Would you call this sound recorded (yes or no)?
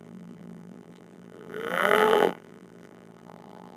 no